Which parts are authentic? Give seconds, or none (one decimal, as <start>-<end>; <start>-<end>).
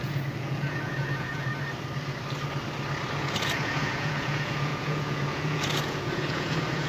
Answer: 1.5-3.1